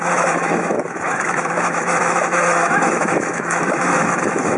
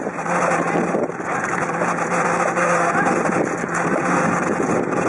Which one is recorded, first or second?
second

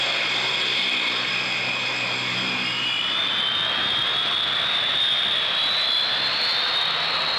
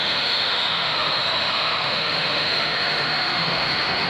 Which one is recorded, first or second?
first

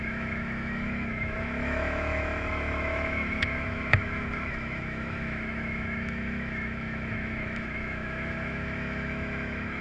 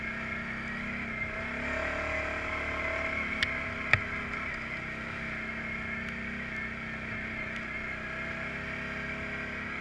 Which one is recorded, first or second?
second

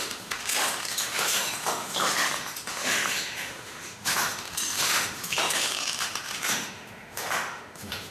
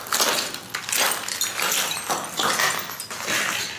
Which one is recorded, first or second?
second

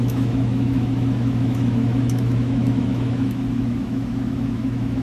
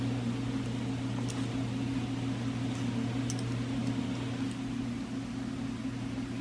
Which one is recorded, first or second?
second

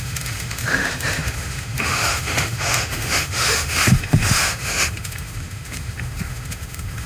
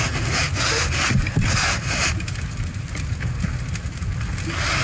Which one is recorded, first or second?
second